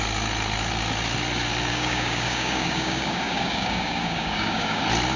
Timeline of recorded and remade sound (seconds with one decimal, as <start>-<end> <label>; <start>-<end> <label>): 0.0-1.7 recorded; 1.7-4.8 remade; 4.8-5.2 recorded